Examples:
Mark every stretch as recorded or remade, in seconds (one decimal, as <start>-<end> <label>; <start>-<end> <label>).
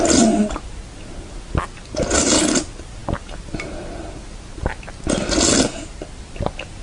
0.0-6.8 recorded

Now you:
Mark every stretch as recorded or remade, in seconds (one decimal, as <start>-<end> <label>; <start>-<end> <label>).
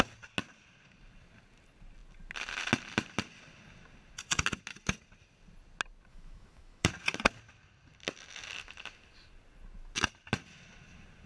0.0-6.1 recorded; 6.1-6.9 remade; 6.9-11.3 recorded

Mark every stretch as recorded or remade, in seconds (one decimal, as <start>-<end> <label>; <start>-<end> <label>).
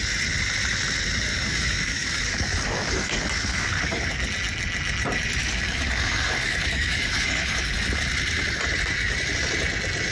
0.0-1.3 recorded; 1.3-4.1 remade; 4.1-5.4 recorded; 5.4-7.7 remade; 7.7-10.1 recorded